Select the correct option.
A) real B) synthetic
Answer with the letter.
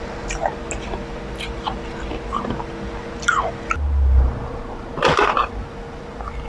A